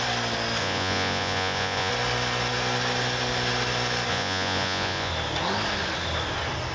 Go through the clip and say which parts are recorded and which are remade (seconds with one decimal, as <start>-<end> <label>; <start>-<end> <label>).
0.0-0.6 recorded; 0.6-1.9 remade; 1.9-4.1 recorded; 4.1-5.1 remade; 5.1-6.7 recorded